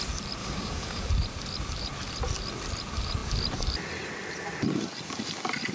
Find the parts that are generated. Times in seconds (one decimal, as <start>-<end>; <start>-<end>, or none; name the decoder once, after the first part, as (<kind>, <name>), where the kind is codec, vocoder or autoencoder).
0.4-1.1 (codec, DAC)